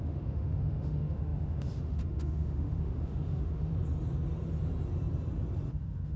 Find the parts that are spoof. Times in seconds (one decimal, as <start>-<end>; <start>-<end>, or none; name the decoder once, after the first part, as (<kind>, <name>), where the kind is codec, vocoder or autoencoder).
0.0-3.7 (autoencoder, DAC-VAE); 5.7-6.2